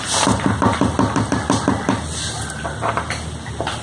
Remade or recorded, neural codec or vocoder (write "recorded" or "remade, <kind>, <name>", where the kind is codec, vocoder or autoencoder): recorded